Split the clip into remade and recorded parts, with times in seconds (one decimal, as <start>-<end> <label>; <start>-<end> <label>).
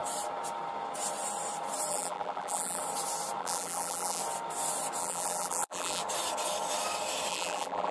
0.0-1.9 recorded; 1.9-2.8 remade; 2.8-3.4 recorded; 3.4-4.2 remade; 4.2-5.0 recorded; 5.0-6.0 remade; 6.0-7.3 recorded; 7.3-7.9 remade